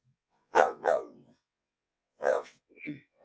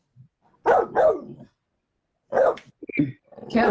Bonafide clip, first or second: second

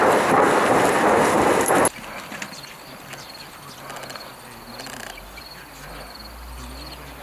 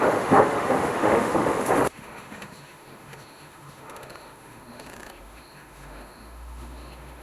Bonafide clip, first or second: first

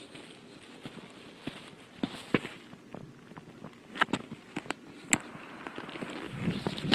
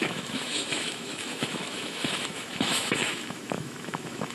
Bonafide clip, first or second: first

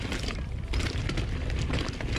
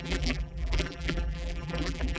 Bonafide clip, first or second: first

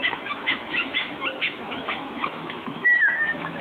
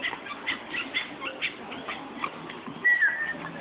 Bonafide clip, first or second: second